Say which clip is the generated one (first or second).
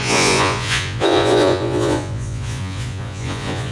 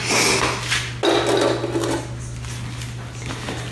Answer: first